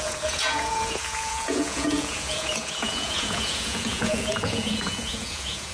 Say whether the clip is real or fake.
fake